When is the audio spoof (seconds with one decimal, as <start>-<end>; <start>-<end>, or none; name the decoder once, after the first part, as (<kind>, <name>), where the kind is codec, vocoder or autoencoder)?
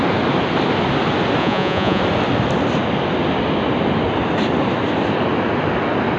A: 1.4-2.0 (vocoder, Vocos)